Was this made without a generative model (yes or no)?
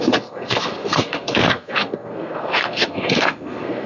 no